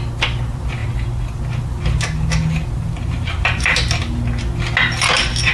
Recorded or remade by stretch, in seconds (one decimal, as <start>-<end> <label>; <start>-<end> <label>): 0.0-5.5 recorded